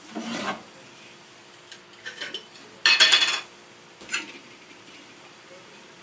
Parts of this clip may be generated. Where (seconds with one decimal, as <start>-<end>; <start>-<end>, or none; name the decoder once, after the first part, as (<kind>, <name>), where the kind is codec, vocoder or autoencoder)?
0.0-1.4 (vocoder, BigVGAN v2); 4.3-6.0